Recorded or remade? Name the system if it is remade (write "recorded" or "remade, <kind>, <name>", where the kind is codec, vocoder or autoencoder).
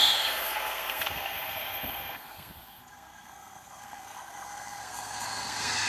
remade, codec, SNAC